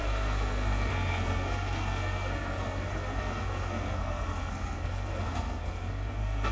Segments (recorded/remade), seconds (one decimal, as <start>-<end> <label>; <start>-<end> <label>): 0.0-6.5 remade